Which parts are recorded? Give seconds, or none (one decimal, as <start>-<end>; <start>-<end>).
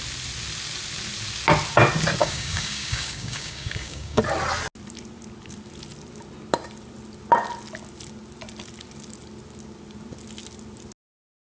0.0-2.2; 4.2-11.4